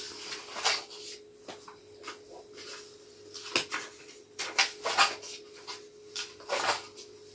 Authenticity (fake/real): real